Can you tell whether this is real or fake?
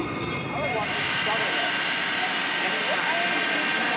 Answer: real